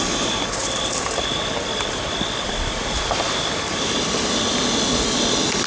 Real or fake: real